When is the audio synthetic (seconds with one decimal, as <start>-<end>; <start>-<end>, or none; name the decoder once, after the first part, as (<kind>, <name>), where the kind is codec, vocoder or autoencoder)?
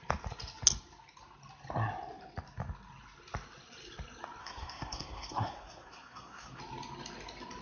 4.4-6.6 (codec, SNAC)